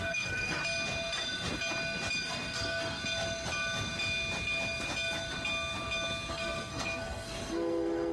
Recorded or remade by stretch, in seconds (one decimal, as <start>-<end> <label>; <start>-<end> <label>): 0.0-0.6 remade; 0.6-2.2 recorded; 2.2-3.0 remade; 3.0-6.3 recorded; 6.3-8.1 remade